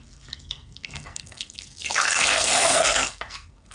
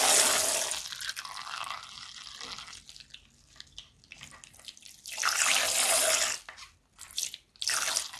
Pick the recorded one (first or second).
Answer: second